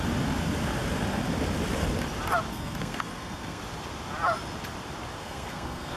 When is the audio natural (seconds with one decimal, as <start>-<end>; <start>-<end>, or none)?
0.0-2.5; 3.6-5.2